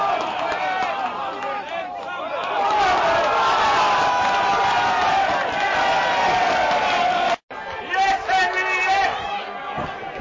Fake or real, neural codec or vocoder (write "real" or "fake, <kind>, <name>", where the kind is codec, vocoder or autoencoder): real